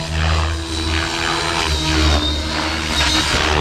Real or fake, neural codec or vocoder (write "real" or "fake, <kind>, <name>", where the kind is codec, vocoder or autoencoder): real